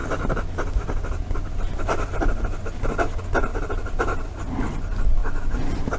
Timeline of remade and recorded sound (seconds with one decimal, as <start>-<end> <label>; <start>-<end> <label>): 0.0-6.0 recorded